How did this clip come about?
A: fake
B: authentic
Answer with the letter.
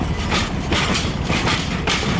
B